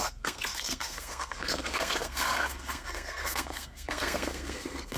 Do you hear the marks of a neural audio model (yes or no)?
yes